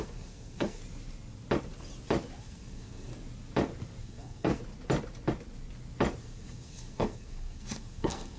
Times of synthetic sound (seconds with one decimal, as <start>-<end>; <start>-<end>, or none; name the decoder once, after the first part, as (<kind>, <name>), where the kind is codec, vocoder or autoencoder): 0.0-0.8 (codec, SNAC); 2.4-3.1; 4.0-4.6; 6.2-8.4